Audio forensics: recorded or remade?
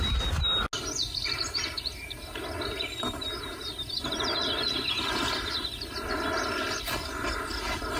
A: recorded